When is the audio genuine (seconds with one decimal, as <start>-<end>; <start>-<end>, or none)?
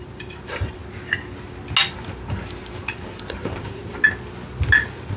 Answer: 0.8-1.9; 3.8-4.8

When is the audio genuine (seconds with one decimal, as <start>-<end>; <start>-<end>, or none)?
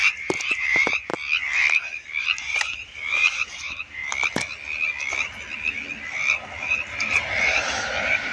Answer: 1.1-2.2; 4.0-7.4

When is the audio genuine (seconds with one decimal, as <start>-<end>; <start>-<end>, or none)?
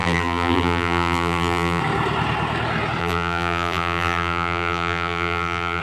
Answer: 1.8-3.0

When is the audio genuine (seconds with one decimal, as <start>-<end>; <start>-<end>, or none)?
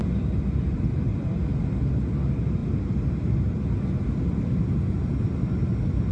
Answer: 0.0-6.1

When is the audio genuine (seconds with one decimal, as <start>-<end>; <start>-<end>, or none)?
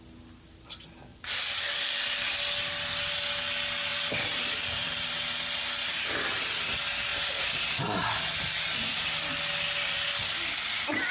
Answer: 0.0-1.1; 1.8-3.9; 4.9-11.1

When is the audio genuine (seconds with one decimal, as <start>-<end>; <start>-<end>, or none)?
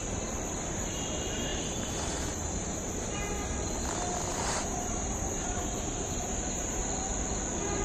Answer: 0.0-1.5; 3.2-4.3; 6.8-7.8